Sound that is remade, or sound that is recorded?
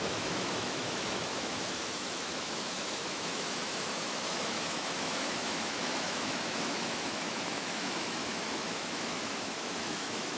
remade